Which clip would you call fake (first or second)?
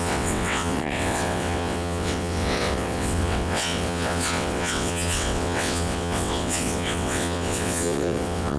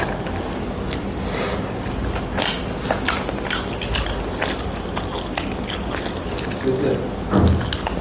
first